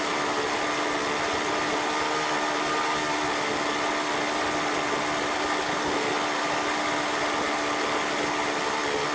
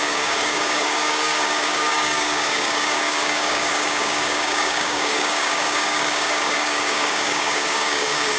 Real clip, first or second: first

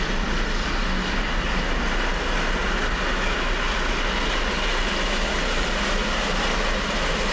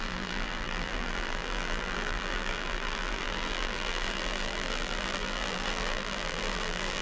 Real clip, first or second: first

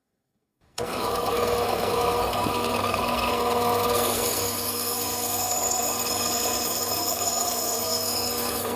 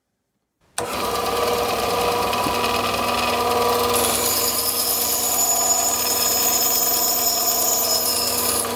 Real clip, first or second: second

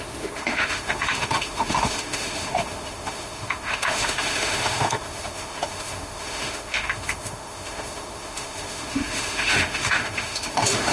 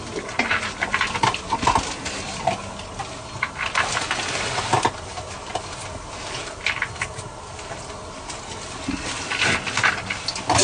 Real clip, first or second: second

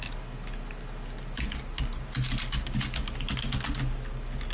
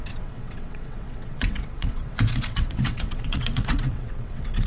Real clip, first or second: first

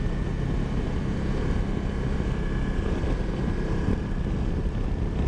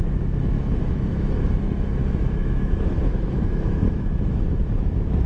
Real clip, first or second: first